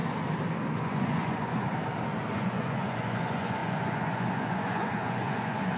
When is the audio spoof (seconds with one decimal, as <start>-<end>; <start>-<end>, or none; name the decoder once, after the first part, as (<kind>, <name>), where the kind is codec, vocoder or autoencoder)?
0.8-1.7 (vocoder, Vocos); 2.3-5.8